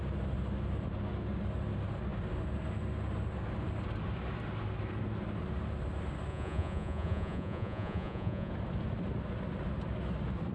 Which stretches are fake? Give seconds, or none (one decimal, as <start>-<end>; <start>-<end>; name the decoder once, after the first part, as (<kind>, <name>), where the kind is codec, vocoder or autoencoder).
6.3-8.5 (vocoder, Vocos)

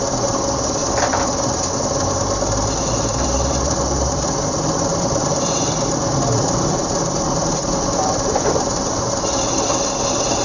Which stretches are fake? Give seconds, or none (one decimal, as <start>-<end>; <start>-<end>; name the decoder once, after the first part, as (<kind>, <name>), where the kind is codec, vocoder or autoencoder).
0.8-5.8 (vocoder, BigVGAN v2); 6.8-10.4